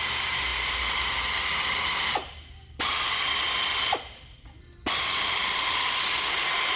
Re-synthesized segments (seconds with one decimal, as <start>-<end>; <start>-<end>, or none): none